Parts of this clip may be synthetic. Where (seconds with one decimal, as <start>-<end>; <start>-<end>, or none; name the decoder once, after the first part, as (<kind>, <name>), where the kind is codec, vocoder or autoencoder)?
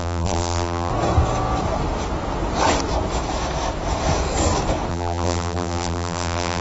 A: 0.0-0.9 (vocoder, BigVGAN v2); 4.9-6.6